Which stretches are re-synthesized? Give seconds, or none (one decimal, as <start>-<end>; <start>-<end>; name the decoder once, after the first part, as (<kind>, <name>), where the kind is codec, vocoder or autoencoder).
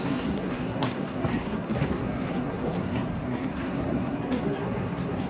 0.0-5.3 (codec, SNAC)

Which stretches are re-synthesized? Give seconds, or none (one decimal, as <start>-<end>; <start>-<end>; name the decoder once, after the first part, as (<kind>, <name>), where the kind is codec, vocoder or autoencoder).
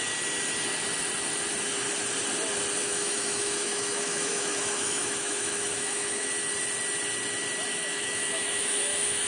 2.8-6.3 (autoencoder, DAC-VAE); 7.7-9.3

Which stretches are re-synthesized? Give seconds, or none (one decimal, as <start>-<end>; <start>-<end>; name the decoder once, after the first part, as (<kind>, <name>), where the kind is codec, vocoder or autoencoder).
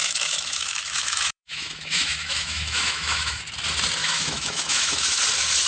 0.0-3.4 (autoencoder, DAC-VAE); 4.0-5.2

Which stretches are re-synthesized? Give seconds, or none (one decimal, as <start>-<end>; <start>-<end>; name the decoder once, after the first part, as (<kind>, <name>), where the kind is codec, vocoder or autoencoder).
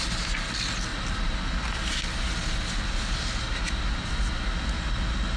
none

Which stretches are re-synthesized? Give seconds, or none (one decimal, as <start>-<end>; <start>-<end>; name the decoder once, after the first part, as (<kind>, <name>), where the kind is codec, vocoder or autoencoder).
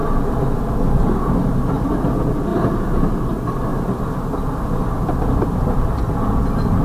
2.5-3.1 (vocoder, BigVGAN v2); 3.7-4.8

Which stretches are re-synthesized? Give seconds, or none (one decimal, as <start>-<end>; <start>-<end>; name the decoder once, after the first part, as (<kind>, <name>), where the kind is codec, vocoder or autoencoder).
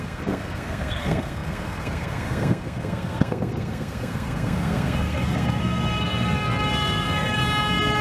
0.0-7.4 (codec, SNAC)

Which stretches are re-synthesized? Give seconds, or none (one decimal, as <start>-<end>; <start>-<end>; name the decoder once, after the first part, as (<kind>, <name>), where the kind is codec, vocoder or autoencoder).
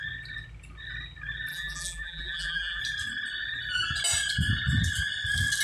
1.5-2.8 (vocoder, BigVGAN v2)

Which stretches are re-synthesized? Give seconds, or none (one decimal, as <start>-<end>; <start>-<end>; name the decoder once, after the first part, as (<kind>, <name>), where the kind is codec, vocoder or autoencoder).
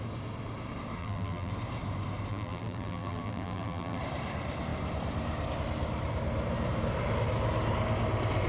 1.0-1.5 (vocoder, BigVGAN v2); 2.3-4.0